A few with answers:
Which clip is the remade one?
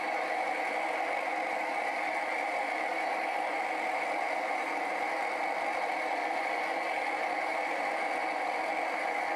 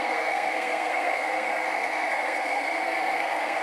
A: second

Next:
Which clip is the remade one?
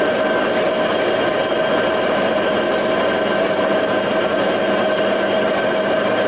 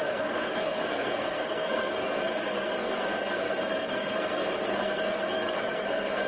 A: second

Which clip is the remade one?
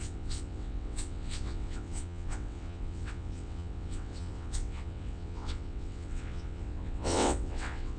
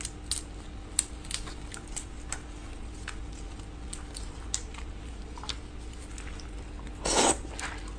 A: first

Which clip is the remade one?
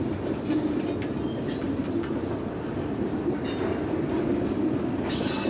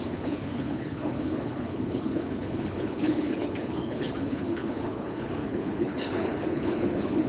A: second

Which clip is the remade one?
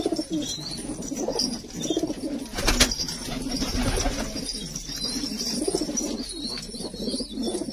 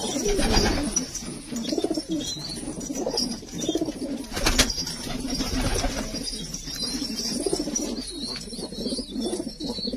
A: second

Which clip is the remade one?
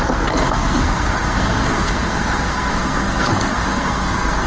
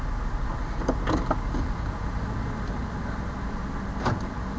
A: first